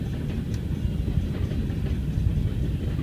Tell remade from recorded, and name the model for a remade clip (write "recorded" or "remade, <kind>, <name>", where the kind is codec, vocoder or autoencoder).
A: recorded